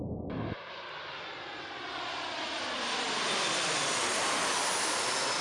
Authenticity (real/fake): real